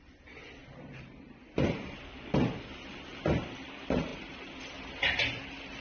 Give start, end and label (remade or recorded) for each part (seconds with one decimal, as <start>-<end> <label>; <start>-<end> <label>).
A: 0.0-0.6 recorded; 0.6-2.1 remade; 2.1-4.1 recorded; 4.1-4.6 remade; 4.6-5.8 recorded

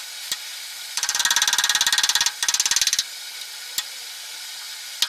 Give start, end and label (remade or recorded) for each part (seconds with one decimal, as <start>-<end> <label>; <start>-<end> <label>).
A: 0.0-0.5 recorded; 0.5-1.2 remade; 1.2-5.1 recorded

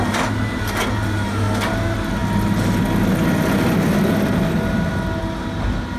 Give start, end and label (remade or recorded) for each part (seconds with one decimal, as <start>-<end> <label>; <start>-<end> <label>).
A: 0.0-6.0 recorded

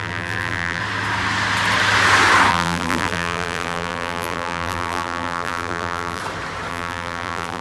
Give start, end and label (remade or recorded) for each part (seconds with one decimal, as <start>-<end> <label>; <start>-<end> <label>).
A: 0.0-0.8 remade; 0.8-2.5 recorded; 2.5-6.2 remade; 6.2-6.7 recorded; 6.7-7.6 remade

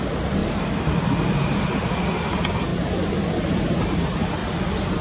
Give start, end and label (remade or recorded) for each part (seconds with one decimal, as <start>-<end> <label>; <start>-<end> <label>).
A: 0.0-5.0 recorded

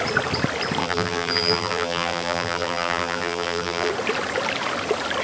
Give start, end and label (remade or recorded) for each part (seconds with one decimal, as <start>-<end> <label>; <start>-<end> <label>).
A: 0.0-0.8 recorded; 0.8-3.9 remade; 3.9-5.2 recorded

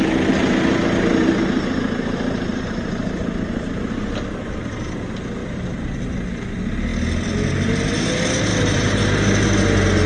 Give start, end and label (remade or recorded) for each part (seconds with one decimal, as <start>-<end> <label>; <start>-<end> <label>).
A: 0.0-2.5 recorded; 2.5-5.0 remade; 5.0-5.4 recorded; 5.4-6.0 remade; 6.0-8.5 recorded; 8.5-9.1 remade; 9.1-10.1 recorded